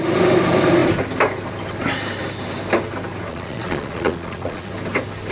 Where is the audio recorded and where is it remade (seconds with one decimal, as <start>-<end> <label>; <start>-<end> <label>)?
0.0-3.3 recorded; 3.3-4.7 remade; 4.7-5.3 recorded